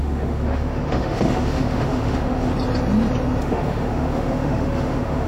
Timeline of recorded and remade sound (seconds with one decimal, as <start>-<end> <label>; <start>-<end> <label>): 0.0-2.5 remade; 2.5-3.4 recorded; 3.4-5.3 remade